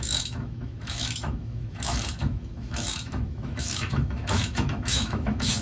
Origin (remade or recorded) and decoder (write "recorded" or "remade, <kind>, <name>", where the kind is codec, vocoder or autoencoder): remade, autoencoder, DAC-VAE